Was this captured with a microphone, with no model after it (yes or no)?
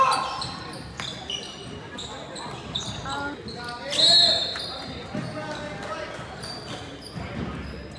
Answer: yes